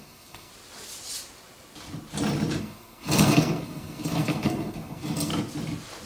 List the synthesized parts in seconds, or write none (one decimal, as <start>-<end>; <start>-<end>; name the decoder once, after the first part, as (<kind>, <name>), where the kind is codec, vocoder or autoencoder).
0.0-0.5 (codec, SNAC); 2.6-5.3